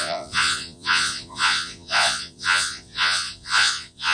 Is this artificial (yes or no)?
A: yes